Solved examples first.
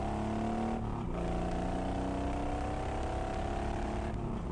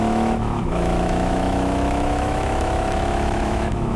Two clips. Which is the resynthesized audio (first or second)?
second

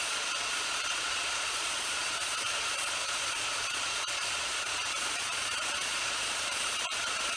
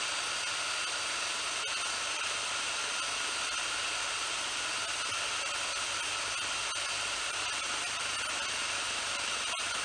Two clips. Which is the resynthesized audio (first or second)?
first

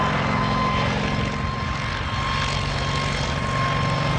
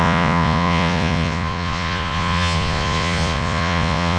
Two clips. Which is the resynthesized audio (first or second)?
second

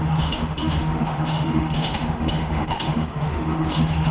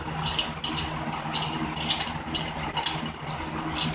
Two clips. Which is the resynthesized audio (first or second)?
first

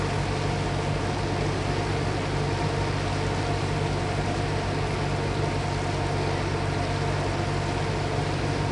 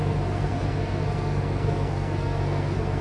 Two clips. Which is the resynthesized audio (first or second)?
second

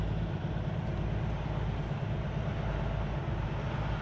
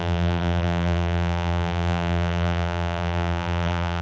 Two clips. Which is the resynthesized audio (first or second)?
second